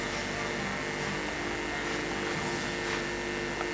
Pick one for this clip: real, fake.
real